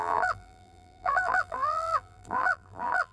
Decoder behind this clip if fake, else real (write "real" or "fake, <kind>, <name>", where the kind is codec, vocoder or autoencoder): fake, vocoder, BigVGAN v2